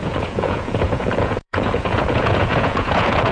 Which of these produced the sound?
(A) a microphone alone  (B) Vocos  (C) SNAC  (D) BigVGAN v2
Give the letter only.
B